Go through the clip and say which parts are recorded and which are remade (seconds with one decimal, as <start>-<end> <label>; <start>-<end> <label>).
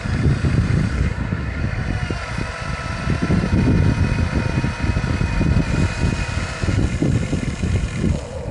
0.0-0.9 recorded; 0.9-1.6 remade; 1.6-8.5 recorded